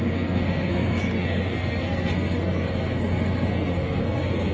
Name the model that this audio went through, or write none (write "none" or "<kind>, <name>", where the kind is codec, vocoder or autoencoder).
codec, SNAC